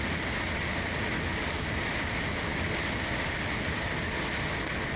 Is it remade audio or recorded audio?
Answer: recorded